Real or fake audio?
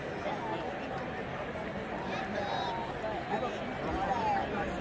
real